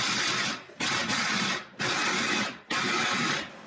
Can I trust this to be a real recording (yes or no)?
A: yes